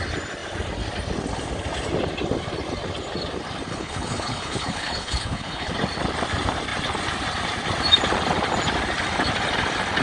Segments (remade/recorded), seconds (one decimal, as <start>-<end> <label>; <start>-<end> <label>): 0.0-3.7 recorded; 3.7-5.7 remade; 5.7-10.0 recorded